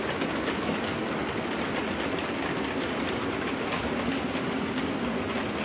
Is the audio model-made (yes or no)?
no